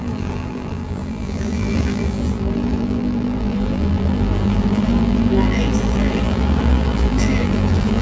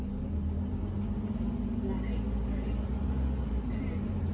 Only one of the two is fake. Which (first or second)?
first